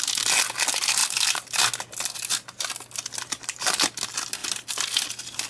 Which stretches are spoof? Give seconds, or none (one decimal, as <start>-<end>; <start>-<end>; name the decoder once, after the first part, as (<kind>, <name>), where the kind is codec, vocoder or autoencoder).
none